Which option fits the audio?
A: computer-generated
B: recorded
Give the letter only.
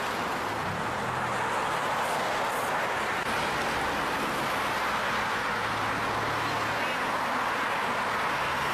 B